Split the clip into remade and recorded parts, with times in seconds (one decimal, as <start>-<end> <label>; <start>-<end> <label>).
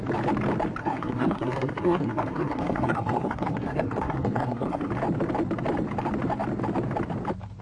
0.0-0.8 recorded; 0.8-4.9 remade; 4.9-7.6 recorded